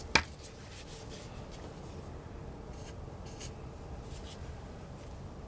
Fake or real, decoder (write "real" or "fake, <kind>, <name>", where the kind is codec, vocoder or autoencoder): real